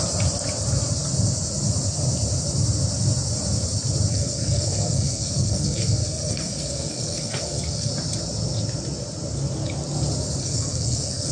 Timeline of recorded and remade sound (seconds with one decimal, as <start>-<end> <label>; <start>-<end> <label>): 0.0-4.1 recorded; 4.1-7.9 remade; 7.9-10.4 recorded; 10.4-11.3 remade